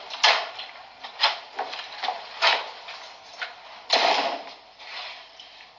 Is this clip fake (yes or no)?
no